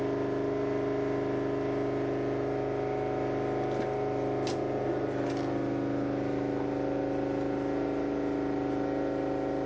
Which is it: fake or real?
real